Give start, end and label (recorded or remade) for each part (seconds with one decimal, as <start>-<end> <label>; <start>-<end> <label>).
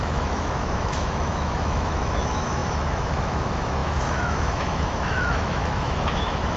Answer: 0.0-6.6 remade